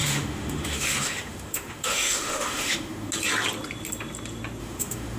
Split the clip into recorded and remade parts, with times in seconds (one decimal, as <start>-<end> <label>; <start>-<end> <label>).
0.0-3.1 remade; 3.1-4.6 recorded; 4.6-5.2 remade